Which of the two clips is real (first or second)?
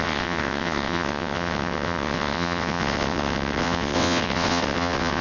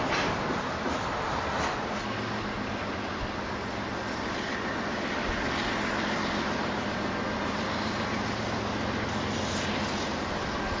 second